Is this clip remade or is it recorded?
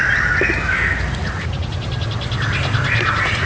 recorded